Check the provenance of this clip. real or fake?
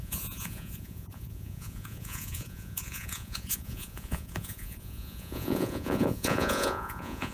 fake